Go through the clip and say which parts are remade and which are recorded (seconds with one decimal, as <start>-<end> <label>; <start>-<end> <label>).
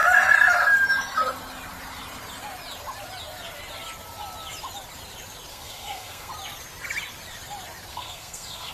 0.0-5.5 recorded; 5.5-6.3 remade; 6.3-7.9 recorded; 7.9-8.7 remade